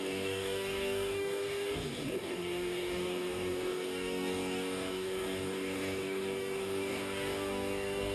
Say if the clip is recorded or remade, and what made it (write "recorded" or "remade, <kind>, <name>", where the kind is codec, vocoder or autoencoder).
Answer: remade, codec, DAC